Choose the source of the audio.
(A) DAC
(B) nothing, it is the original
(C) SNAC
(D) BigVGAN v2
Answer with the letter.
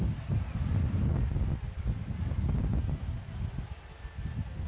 B